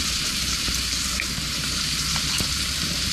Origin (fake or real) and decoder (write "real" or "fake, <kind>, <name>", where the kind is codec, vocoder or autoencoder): fake, vocoder, BigVGAN v2